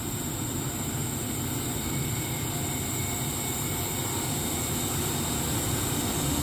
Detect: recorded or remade recorded